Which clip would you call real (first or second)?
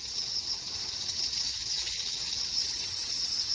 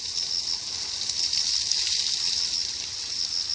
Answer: second